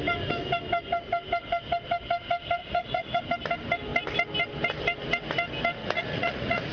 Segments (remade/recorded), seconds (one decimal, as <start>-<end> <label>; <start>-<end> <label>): 0.0-2.6 recorded; 2.6-3.2 remade; 3.2-5.8 recorded; 5.8-6.7 remade